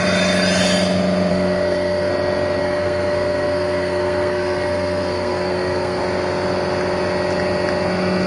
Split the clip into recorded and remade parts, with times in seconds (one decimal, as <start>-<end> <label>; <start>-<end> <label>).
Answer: 0.0-1.3 recorded; 1.3-2.1 remade; 2.1-2.6 recorded; 2.6-6.0 remade; 6.0-8.3 recorded